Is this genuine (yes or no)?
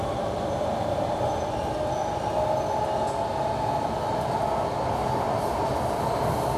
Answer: yes